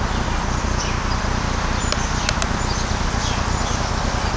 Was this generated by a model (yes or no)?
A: no